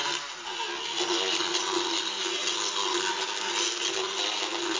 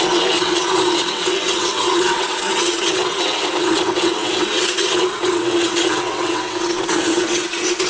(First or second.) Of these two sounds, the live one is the first